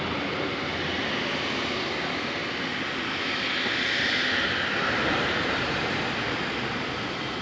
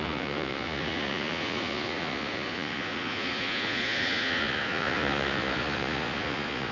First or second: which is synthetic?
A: second